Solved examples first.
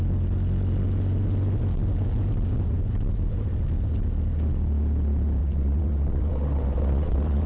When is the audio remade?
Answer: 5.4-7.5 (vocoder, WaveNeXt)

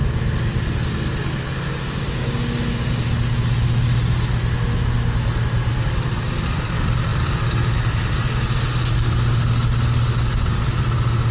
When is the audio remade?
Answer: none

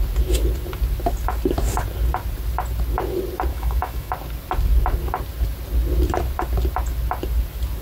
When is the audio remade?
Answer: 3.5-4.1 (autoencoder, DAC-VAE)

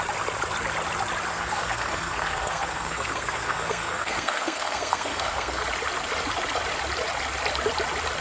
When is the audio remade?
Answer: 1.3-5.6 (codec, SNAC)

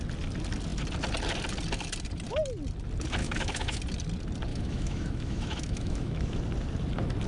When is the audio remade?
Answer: 3.2-3.8 (autoencoder, DAC-VAE); 4.5-6.4

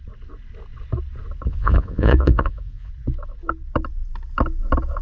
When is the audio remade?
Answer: 1.5-2.9 (vocoder, Vocos)